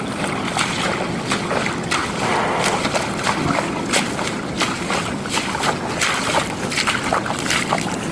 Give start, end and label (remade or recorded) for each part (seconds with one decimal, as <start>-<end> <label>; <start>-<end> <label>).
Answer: 0.0-8.1 recorded